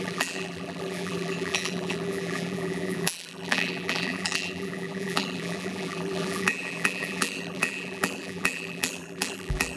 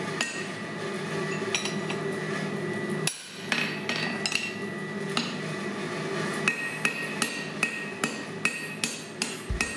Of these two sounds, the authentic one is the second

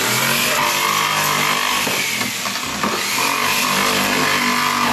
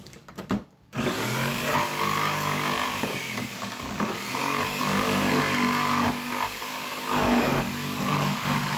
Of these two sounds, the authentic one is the first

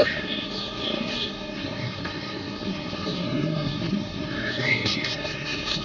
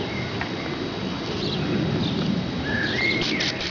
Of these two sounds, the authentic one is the second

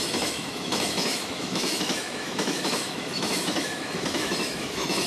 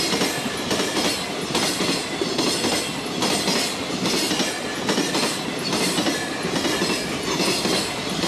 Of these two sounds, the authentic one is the second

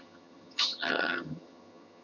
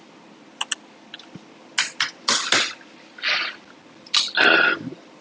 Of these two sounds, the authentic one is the second